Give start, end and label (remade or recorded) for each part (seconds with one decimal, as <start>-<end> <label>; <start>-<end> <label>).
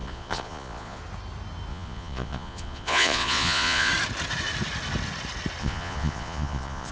0.0-1.0 remade; 1.0-1.7 recorded; 1.7-3.9 remade; 3.9-5.6 recorded; 5.6-6.9 remade